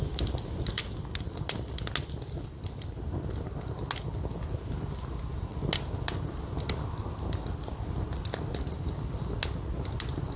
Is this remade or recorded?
recorded